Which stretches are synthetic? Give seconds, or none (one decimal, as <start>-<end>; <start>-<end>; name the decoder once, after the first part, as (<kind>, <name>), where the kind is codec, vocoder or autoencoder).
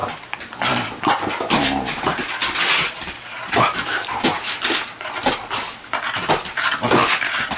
2.4-4.7 (vocoder, BigVGAN v2)